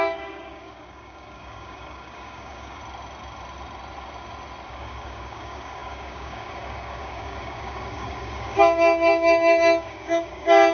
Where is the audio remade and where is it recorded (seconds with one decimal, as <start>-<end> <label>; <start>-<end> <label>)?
0.0-2.8 remade; 2.8-4.7 recorded; 4.7-10.7 remade